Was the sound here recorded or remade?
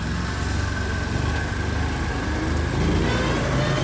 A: recorded